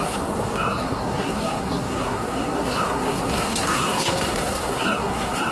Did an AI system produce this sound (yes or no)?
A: yes